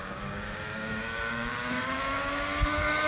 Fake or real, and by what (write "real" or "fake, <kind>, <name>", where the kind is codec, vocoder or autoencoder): fake, codec, DAC